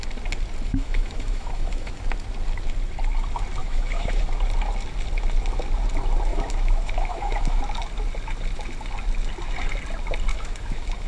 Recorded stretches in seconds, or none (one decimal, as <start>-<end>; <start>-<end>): 0.0-0.7; 1.9-3.6; 4.2-6.3; 7.6-10.3

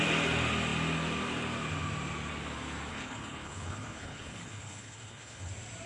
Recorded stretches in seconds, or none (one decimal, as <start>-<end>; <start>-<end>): 0.0-2.9; 5.5-5.9

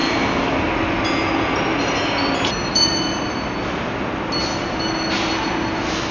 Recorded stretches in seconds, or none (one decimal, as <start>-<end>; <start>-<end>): 0.0-6.1

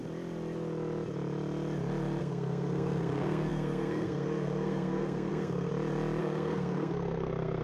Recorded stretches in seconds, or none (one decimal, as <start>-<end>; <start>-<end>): 0.0-2.2; 5.7-6.2

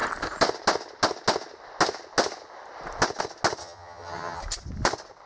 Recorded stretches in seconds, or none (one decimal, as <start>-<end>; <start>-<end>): 0.0-3.6; 4.4-5.3

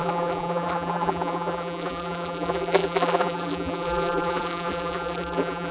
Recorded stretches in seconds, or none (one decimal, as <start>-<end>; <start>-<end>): none

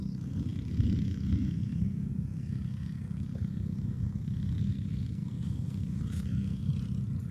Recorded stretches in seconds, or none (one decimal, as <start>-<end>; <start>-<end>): 6.7-7.3

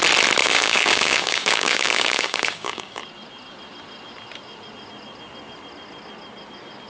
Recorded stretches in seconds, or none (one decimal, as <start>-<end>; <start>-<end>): 0.0-0.4; 3.0-6.9